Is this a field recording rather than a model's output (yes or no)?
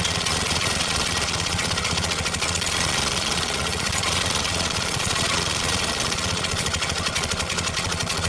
no